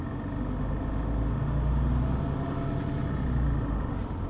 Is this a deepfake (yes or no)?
no